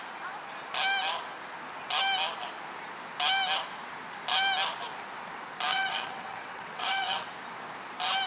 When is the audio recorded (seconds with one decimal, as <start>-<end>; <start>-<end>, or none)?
0.0-5.7; 7.3-8.3